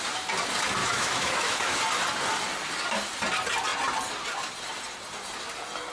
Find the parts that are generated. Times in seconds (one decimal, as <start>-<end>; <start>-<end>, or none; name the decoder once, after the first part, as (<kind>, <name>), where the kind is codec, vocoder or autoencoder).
0.8-1.8 (autoencoder, DAC-VAE)